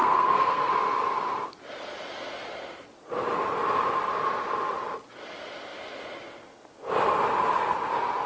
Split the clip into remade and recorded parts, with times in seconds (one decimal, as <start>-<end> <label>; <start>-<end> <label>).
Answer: 0.0-0.7 remade; 0.7-8.3 recorded